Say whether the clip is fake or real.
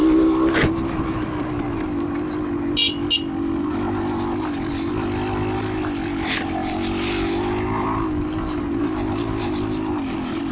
real